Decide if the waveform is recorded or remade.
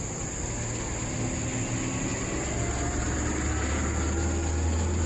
recorded